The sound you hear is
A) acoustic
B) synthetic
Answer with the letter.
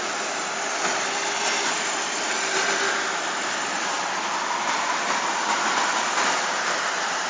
B